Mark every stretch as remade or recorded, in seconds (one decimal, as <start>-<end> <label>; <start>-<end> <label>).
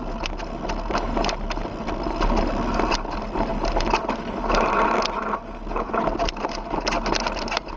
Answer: 0.0-7.8 recorded